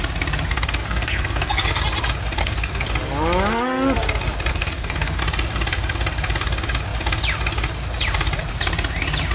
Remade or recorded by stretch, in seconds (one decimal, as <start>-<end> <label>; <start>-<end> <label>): 0.0-0.5 recorded; 0.5-1.8 remade; 1.8-2.4 recorded; 2.4-2.9 remade; 2.9-4.5 recorded; 4.5-5.2 remade; 5.2-9.3 recorded